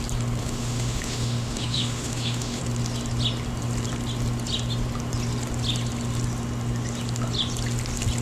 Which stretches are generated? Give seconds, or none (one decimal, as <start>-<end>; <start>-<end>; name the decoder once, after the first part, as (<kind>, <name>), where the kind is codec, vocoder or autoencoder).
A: 0.4-2.6 (autoencoder, DAC-VAE)